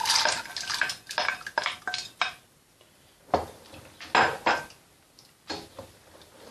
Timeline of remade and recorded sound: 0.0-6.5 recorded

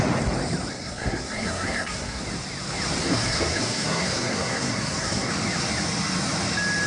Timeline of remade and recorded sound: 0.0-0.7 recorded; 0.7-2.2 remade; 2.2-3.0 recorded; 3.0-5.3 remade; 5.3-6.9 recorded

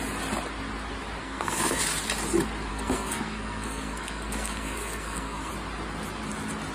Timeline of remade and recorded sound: 0.0-1.2 recorded; 1.2-1.8 remade; 1.8-2.7 recorded; 2.7-5.5 remade; 5.5-6.7 recorded

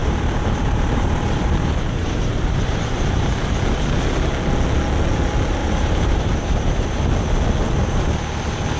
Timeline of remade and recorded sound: 0.0-3.5 remade; 3.5-5.6 recorded; 5.6-7.0 remade; 7.0-8.8 recorded

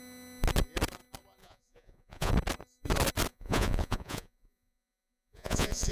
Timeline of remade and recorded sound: 0.0-1.4 recorded; 1.4-2.3 remade; 2.3-3.3 recorded; 3.3-5.9 remade

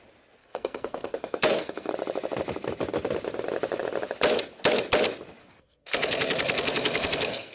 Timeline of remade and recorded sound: 0.0-0.4 recorded; 0.4-1.9 remade; 1.9-5.4 recorded; 5.4-7.5 remade